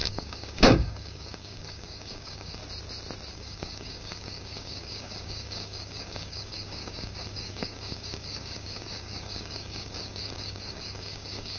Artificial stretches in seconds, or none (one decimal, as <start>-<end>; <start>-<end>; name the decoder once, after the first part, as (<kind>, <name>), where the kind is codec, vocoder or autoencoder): 0.0-2.6 (codec, DAC); 3.3-11.6